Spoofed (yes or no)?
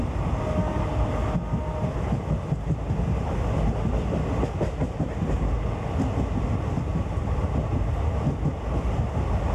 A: no